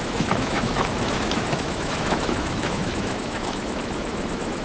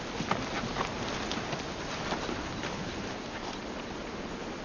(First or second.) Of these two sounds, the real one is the second